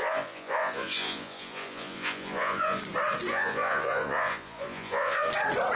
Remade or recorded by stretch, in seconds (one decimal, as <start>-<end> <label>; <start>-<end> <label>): 0.0-2.8 remade; 2.8-3.3 recorded; 3.3-5.3 remade; 5.3-5.8 recorded